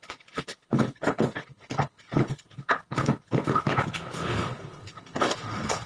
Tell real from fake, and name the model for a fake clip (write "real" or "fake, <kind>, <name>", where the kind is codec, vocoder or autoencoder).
fake, codec, HILCodec